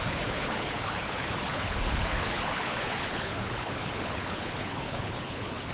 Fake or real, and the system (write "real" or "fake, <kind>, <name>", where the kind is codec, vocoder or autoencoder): fake, codec, HILCodec